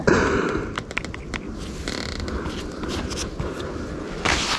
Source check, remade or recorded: recorded